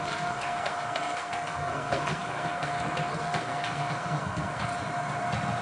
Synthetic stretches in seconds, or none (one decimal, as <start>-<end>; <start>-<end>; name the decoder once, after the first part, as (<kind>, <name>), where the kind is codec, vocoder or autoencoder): 0.0-4.7 (codec, SNAC)